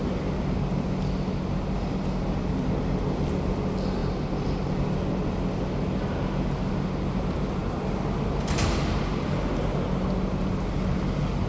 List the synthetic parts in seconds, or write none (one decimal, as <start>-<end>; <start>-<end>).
none